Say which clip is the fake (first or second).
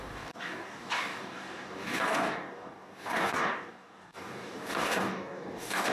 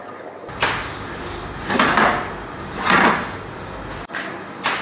first